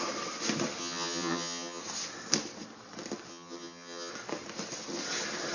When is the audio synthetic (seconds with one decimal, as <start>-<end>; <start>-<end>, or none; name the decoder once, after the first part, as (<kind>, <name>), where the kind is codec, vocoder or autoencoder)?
0.8-1.8 (vocoder, HiFi-GAN); 3.3-4.1